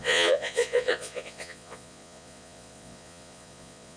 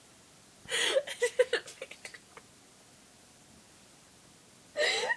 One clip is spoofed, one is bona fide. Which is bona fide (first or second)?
second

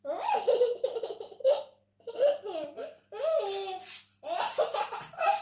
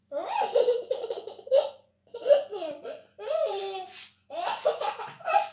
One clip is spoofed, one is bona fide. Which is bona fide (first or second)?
first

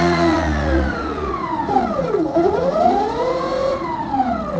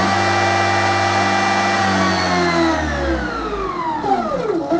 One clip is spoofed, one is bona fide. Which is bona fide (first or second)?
second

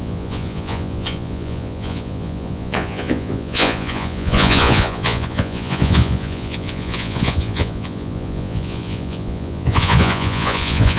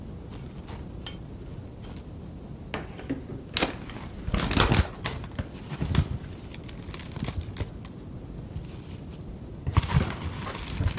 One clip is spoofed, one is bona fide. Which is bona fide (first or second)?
second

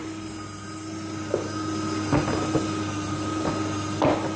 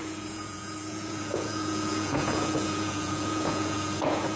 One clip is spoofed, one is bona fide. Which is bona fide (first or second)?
first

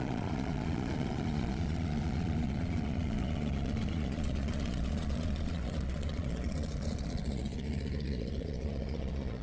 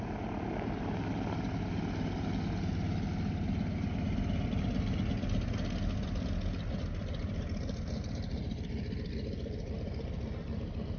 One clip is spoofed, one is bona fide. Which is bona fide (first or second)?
second